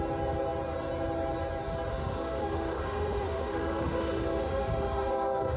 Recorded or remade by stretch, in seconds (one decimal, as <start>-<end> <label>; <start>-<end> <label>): 0.0-1.9 recorded; 1.9-5.6 remade